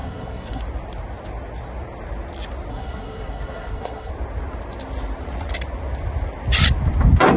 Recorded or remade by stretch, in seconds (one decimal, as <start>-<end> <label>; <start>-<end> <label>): 0.0-0.6 remade; 0.6-2.7 recorded; 2.7-4.1 remade; 4.1-7.4 recorded